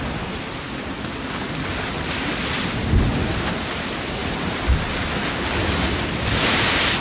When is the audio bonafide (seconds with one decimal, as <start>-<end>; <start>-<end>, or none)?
0.0-7.0